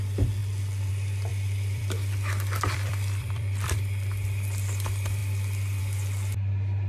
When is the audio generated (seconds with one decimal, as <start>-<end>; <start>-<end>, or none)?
1.3-3.8